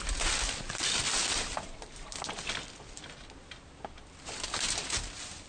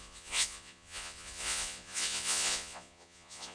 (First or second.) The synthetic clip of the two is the second